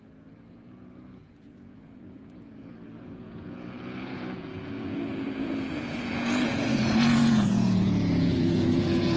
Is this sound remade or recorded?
remade